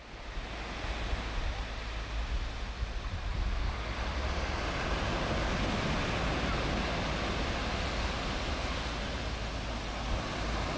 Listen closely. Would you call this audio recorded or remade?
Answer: recorded